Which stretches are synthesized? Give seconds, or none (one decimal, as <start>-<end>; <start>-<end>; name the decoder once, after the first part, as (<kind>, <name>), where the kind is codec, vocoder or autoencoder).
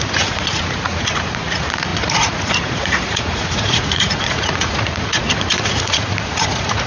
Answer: 0.0-6.9 (vocoder, Vocos)